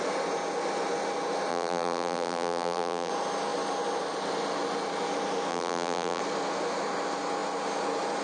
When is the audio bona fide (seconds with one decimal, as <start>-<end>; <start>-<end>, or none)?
0.0-1.5; 3.1-5.5; 6.2-8.2